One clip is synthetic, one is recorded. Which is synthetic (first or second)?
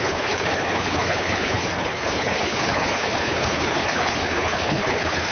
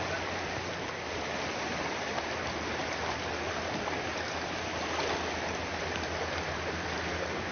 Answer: first